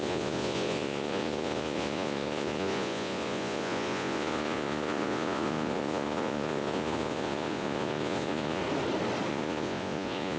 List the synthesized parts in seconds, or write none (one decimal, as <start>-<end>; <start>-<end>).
0.0-8.6; 9.3-10.4